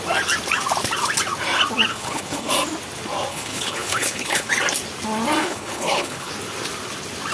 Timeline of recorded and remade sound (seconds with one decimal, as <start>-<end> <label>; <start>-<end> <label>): 0.0-1.9 recorded; 1.9-2.5 remade; 2.5-3.3 recorded; 3.3-4.5 remade; 4.5-5.4 recorded; 5.4-6.3 remade; 6.3-7.3 recorded